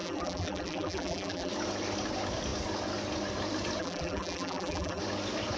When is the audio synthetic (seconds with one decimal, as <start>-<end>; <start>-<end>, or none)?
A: 0.0-1.5; 3.8-5.0